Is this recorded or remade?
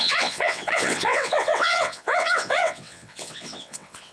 remade